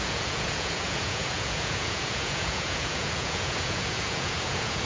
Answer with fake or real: fake